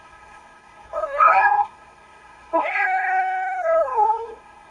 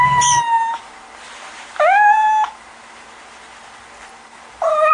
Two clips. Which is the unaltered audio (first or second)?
second